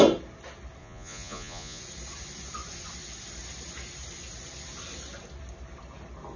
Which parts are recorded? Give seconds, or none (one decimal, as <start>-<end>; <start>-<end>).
0.0-0.8; 1.8-6.4